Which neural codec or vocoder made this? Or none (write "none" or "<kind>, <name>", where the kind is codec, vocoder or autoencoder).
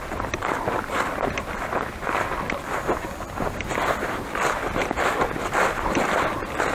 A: vocoder, BigVGAN v2